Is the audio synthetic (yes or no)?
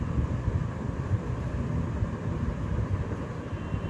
yes